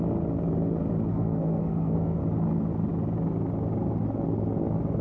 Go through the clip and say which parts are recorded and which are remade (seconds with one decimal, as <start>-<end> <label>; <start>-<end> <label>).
0.0-1.1 recorded; 1.1-2.2 remade; 2.2-5.0 recorded